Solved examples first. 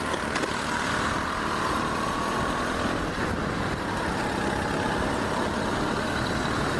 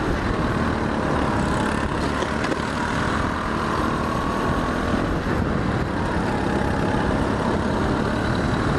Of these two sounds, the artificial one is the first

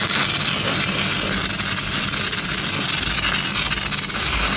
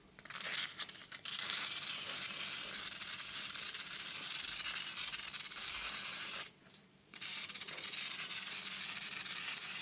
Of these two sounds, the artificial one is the second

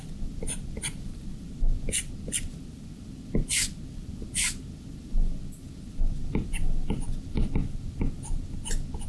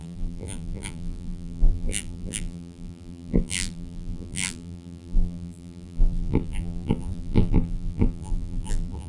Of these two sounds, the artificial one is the second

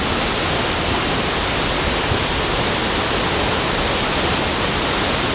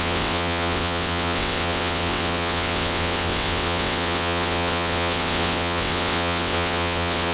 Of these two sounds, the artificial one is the second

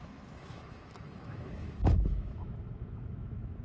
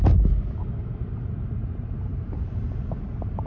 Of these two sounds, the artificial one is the first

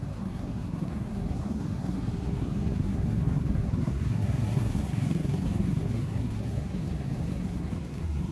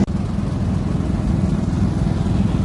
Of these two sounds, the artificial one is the first